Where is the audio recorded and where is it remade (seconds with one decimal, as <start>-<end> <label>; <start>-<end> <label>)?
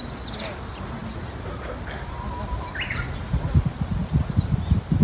0.0-5.0 recorded